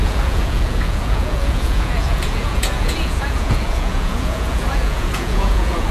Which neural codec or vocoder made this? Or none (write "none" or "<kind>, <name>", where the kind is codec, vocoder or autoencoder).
vocoder, Vocos